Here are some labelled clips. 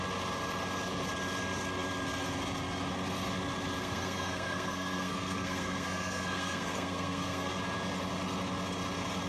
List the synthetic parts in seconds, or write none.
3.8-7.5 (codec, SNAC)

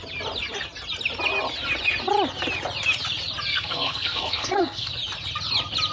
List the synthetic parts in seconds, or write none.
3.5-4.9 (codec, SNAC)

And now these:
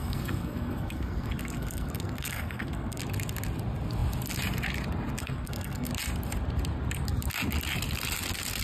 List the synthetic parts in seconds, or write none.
0.0-3.0 (codec, SNAC); 5.2-5.9

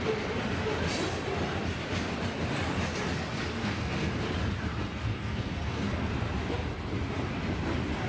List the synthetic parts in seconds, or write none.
3.6-4.1 (codec, SNAC); 4.7-6.1

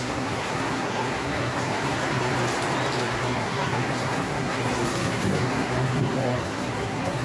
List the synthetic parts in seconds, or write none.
0.0-2.3 (codec, SNAC); 3.0-7.2

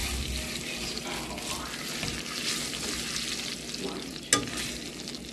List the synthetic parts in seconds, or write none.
none